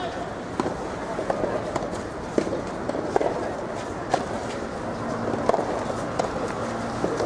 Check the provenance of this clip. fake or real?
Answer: real